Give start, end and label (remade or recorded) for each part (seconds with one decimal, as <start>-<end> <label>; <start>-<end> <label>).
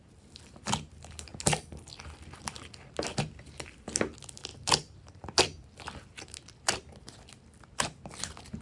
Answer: 0.0-8.6 recorded